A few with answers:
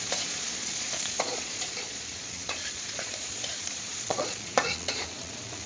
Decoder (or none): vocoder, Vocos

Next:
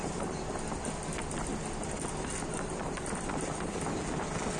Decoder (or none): none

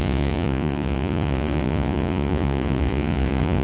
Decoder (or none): vocoder, Vocos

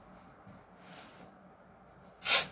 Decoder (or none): none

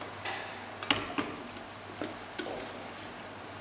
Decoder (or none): none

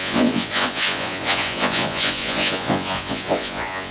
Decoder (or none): vocoder, Vocos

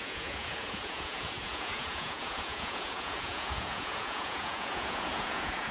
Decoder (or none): vocoder, Vocos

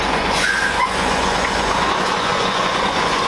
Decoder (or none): vocoder, Vocos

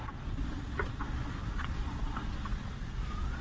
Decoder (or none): vocoder, Vocos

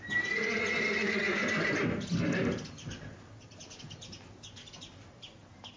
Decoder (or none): none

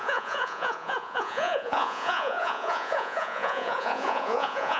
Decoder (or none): vocoder, Vocos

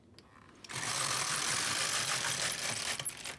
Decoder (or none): none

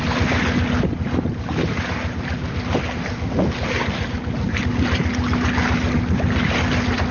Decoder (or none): none